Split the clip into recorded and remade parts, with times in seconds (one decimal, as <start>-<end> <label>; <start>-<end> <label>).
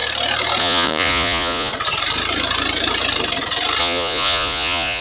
0.0-0.6 recorded; 0.6-1.7 remade; 1.7-3.8 recorded; 3.8-5.0 remade